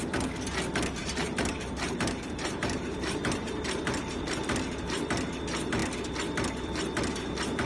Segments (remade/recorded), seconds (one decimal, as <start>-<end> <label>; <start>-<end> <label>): 0.0-1.0 recorded; 1.0-5.0 remade; 5.0-7.7 recorded